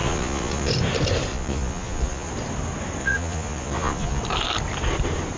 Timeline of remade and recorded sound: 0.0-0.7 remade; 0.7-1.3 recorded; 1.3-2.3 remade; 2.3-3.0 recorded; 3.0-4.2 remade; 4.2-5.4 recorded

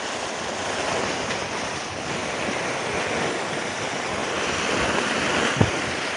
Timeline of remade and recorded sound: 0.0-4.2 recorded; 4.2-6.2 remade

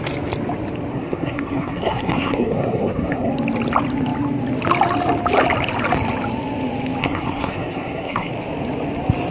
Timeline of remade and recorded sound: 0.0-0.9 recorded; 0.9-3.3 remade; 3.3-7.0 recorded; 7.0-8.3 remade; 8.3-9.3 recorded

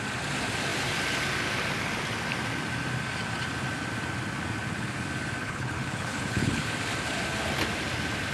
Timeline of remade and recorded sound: 0.0-5.4 recorded; 5.4-6.7 remade; 6.7-8.3 recorded